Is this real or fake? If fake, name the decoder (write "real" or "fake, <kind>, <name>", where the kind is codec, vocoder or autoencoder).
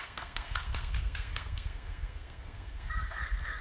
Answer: fake, codec, SNAC